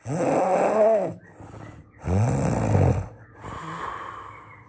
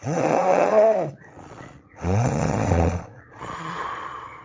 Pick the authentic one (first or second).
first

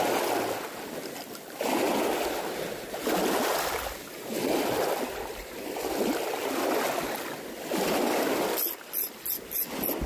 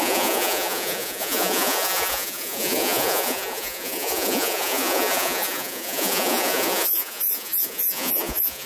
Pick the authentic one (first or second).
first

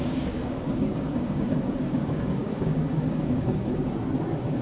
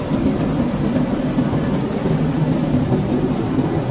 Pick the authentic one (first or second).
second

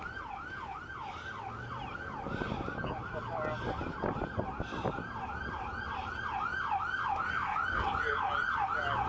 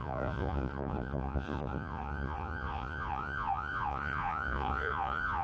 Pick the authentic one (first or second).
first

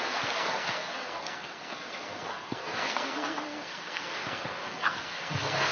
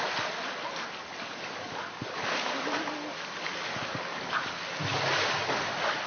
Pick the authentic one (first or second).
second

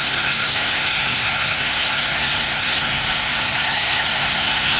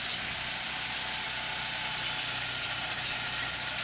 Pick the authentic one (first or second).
second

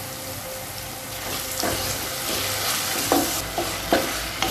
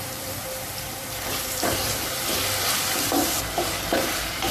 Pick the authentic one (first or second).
first